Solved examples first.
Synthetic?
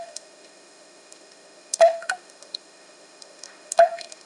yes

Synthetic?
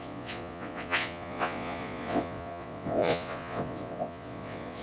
yes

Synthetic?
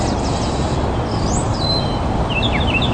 no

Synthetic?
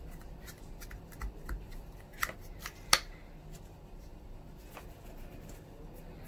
no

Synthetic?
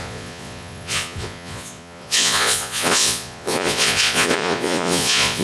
yes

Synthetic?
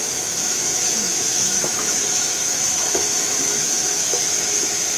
yes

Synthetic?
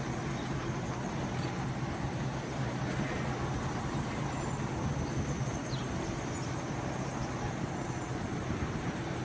no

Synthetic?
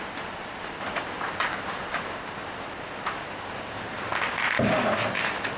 no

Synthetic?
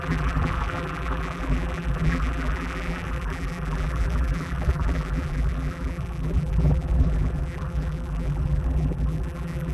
yes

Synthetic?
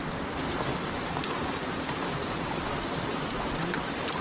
yes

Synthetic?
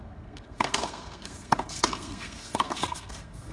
yes